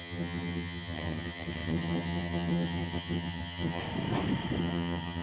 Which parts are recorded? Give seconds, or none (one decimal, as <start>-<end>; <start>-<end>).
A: 3.8-4.6